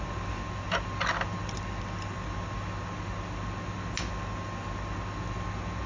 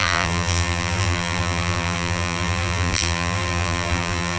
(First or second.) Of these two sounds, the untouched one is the first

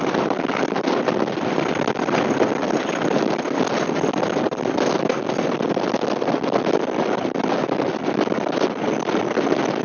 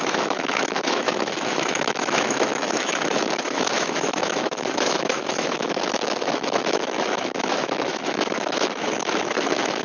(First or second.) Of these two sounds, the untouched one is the first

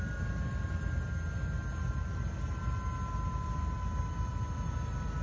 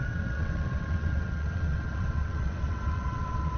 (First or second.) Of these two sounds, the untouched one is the first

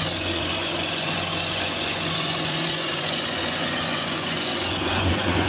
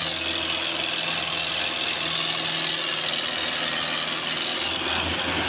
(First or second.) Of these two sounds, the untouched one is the second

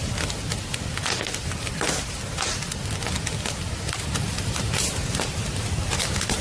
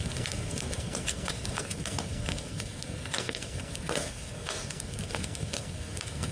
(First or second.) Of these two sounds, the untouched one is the first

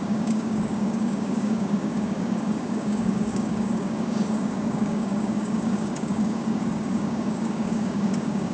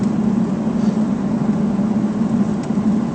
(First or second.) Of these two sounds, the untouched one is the second